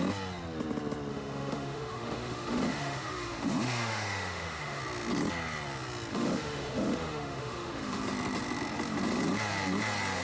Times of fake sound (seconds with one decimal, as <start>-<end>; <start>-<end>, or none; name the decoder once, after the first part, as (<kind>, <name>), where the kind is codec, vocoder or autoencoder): 1.1-4.8 (autoencoder, DAC-VAE); 6.1-8.0